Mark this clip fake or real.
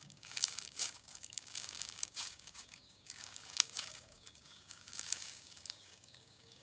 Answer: fake